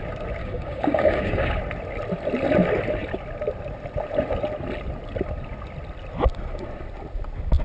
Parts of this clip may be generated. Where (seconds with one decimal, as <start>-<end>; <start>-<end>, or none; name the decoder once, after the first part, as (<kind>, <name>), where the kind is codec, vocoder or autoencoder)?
0.4-1.6 (codec, DAC)